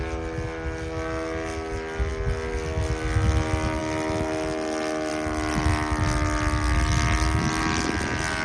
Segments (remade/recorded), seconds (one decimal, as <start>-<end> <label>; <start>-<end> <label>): 0.0-8.4 recorded